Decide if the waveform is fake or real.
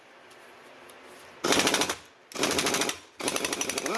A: real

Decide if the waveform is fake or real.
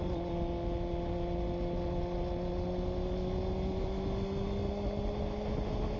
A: real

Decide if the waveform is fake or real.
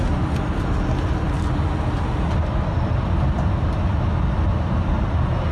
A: real